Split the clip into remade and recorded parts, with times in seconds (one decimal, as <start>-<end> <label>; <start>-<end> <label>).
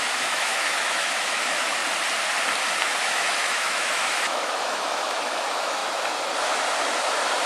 0.0-1.8 remade; 1.8-3.0 recorded; 3.0-5.8 remade; 5.8-7.5 recorded